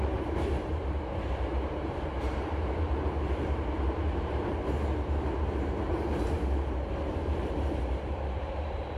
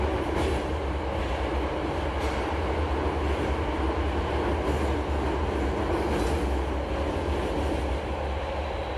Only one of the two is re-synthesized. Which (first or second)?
first